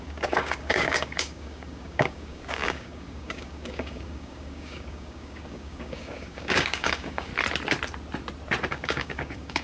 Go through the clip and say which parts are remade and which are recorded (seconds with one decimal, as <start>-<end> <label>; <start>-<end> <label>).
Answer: 0.0-7.3 remade; 7.3-8.7 recorded; 8.7-9.6 remade